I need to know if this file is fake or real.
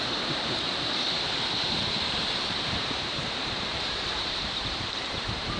fake